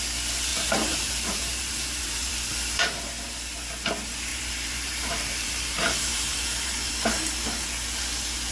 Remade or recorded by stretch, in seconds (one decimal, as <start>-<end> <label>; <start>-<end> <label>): 0.0-0.5 recorded; 0.5-2.3 remade; 2.3-4.3 recorded; 4.3-6.9 remade; 6.9-8.5 recorded